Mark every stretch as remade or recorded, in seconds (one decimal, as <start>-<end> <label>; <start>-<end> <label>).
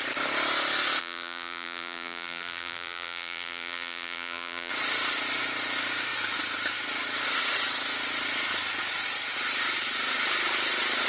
0.0-1.0 recorded; 1.0-4.7 remade; 4.7-11.1 recorded